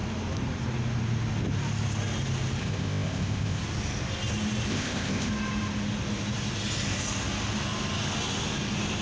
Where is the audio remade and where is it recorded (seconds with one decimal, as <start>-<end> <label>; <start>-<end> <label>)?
0.0-2.6 recorded; 2.6-3.6 remade; 3.6-4.7 recorded; 4.7-5.3 remade; 5.3-9.0 recorded